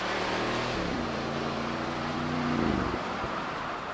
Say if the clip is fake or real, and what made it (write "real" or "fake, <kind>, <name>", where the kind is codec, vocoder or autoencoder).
fake, vocoder, BigVGAN v2